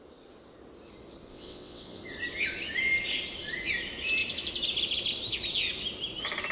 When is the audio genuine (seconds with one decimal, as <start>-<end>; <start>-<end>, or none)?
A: 0.0-1.3; 2.0-6.5